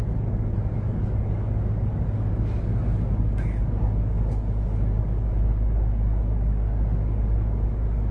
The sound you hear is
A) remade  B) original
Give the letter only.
A